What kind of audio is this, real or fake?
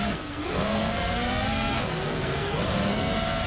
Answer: fake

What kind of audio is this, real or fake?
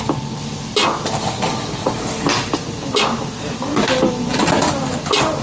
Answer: real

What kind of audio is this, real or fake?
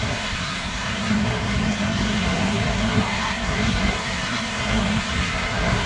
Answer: fake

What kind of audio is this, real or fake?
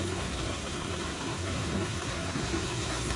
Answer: fake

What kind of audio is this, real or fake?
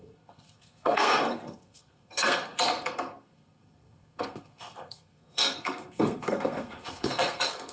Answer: fake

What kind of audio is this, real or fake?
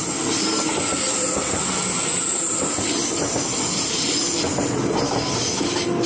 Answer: real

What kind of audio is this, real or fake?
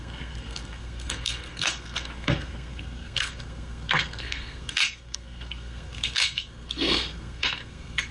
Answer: fake